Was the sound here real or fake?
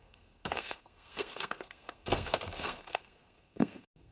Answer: fake